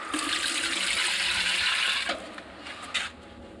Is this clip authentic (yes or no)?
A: yes